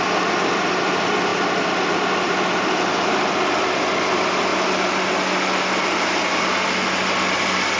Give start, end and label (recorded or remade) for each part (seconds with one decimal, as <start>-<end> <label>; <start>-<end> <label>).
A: 0.0-7.8 recorded